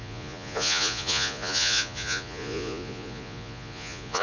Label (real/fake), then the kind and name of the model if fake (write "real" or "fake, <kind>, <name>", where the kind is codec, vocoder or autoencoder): fake, vocoder, Vocos